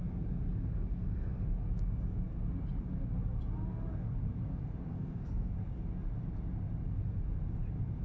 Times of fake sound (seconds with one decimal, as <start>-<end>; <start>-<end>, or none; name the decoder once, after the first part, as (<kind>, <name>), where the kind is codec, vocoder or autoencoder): 4.9-5.5 (codec, SNAC)